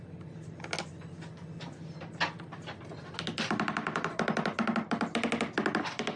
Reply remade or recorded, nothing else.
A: recorded